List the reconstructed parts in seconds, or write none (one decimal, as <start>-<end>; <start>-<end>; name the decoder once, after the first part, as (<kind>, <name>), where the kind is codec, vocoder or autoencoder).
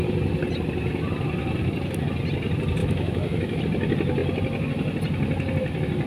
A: 2.8-3.6 (autoencoder, DAC-VAE)